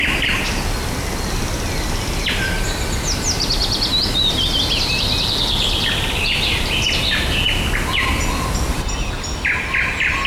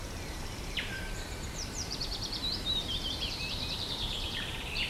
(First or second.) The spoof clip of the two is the second